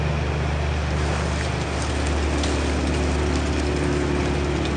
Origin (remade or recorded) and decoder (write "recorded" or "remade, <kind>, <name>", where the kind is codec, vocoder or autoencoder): recorded